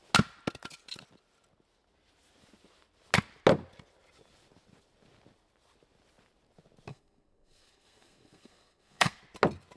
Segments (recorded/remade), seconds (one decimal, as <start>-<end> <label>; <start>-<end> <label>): 0.0-6.9 recorded; 6.9-9.2 remade; 9.2-9.8 recorded